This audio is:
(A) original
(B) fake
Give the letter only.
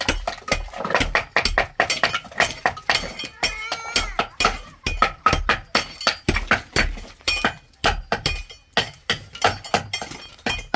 A